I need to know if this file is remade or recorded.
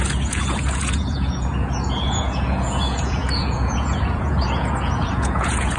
remade